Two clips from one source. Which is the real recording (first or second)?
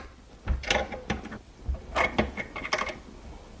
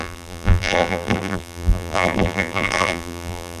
first